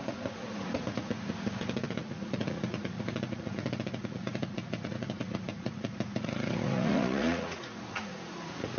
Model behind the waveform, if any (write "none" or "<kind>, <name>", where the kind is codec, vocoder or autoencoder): vocoder, Vocos